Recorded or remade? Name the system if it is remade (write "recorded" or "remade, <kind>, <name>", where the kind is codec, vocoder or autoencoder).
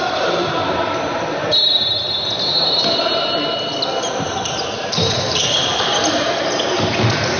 remade, vocoder, BigVGAN v2